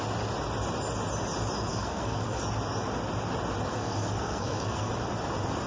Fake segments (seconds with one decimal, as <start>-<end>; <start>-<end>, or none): 1.7-2.4; 3.7-4.9